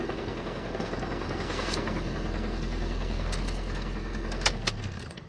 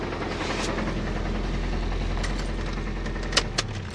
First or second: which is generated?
first